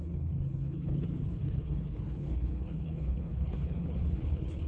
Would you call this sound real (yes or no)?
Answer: no